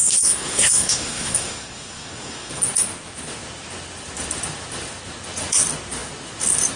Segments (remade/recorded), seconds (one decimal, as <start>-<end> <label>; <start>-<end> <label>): 0.0-2.6 remade; 2.6-6.8 recorded